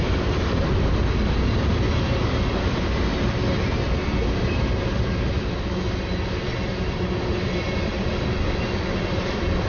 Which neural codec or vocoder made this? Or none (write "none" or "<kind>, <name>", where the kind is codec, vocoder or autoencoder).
none